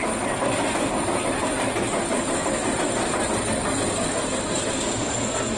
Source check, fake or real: real